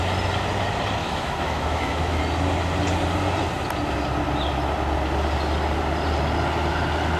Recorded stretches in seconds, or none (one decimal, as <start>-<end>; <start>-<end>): 0.0-1.0; 2.2-7.2